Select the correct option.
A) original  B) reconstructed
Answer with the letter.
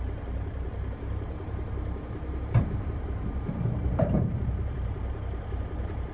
B